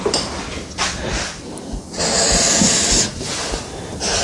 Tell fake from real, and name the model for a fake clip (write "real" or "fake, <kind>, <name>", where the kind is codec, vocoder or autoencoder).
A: real